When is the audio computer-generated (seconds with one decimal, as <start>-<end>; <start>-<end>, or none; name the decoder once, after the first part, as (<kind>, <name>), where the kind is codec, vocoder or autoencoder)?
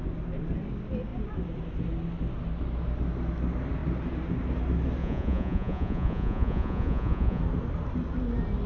5.0-7.4 (vocoder, Vocos)